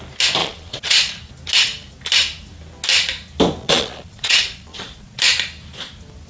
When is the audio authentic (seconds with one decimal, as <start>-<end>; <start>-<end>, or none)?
0.0-0.4; 1.1-3.6; 5.2-6.3